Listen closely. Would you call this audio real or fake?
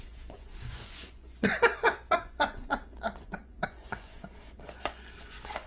fake